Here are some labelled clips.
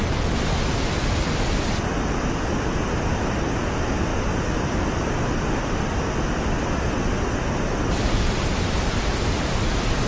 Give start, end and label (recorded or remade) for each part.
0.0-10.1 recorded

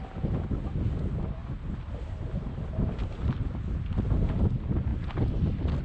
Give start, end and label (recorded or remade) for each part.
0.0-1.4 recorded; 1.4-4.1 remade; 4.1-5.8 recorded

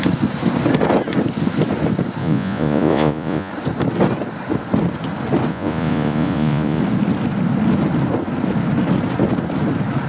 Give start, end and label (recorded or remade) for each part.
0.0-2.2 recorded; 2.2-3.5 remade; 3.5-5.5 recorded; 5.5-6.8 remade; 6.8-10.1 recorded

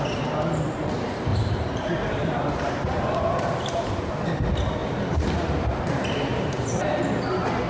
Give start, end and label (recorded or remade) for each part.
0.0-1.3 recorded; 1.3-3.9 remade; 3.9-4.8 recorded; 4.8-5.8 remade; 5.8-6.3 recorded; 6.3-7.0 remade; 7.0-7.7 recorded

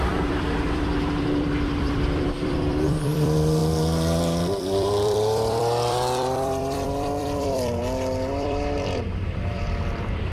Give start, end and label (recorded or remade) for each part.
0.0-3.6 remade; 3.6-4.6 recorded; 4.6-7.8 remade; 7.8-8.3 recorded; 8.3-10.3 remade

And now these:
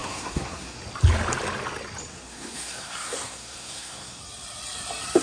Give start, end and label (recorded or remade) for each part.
0.0-0.8 remade; 0.8-2.1 recorded; 2.1-4.2 remade; 4.2-5.2 recorded